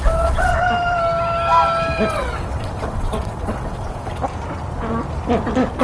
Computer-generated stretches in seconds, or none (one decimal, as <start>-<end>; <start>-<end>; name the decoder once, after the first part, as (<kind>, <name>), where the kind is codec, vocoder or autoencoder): 0.0-0.5 (vocoder, WaveNeXt); 2.1-4.2